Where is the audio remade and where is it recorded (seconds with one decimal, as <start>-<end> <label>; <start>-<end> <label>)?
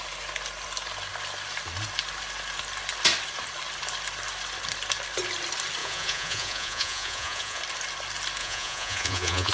0.0-5.8 recorded; 5.8-7.6 remade; 7.6-8.4 recorded; 8.4-9.5 remade